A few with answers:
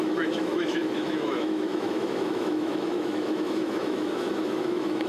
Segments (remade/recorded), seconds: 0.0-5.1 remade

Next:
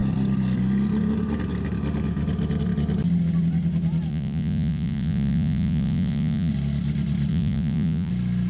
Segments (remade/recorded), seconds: 0.0-4.1 recorded; 4.1-6.5 remade; 6.5-7.3 recorded; 7.3-8.1 remade; 8.1-8.5 recorded

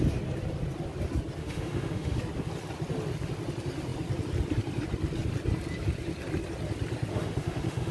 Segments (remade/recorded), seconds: 0.0-1.4 recorded; 1.4-2.2 remade; 2.2-7.1 recorded; 7.1-7.9 remade

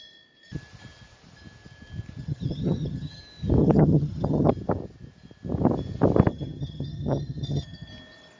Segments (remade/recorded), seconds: 0.0-2.2 recorded; 2.2-3.2 remade; 3.2-3.6 recorded; 3.6-4.5 remade; 4.5-6.3 recorded; 6.3-7.9 remade; 7.9-8.4 recorded

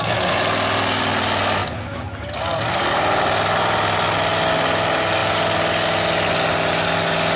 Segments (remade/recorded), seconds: 0.0-7.4 recorded

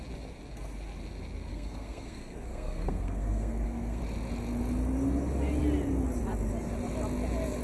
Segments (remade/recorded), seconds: 0.0-1.5 recorded; 1.5-4.0 remade; 4.0-7.6 recorded

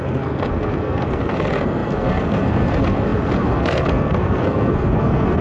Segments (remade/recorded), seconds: 0.0-5.4 remade

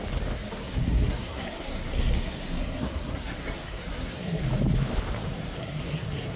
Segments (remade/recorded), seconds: 0.0-0.6 recorded; 0.6-4.4 remade; 4.4-5.3 recorded; 5.3-6.4 remade